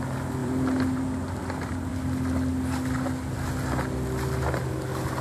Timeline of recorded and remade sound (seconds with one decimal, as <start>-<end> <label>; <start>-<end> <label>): 0.0-1.9 remade; 1.9-5.2 recorded